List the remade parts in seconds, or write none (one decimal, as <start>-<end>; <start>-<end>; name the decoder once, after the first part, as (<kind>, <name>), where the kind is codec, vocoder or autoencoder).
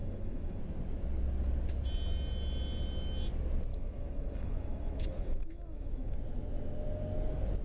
0.0-0.6 (autoencoder, DAC-VAE); 3.7-6.2